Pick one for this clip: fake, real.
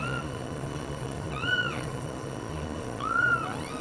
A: fake